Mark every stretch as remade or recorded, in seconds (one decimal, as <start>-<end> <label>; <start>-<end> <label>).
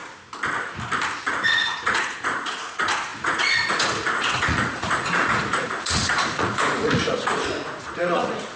0.0-1.2 recorded; 1.2-8.6 remade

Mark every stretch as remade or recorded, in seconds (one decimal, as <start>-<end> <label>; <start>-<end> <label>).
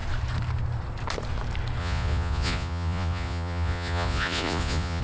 0.0-1.8 recorded; 1.8-5.0 remade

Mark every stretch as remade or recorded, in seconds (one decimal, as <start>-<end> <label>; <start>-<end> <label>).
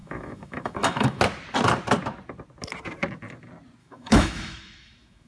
0.0-1.2 remade; 1.2-3.8 recorded; 3.8-5.3 remade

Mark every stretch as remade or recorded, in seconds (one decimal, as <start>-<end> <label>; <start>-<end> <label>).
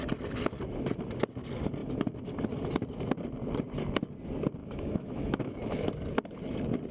0.0-4.6 recorded; 4.6-5.9 remade; 5.9-6.9 recorded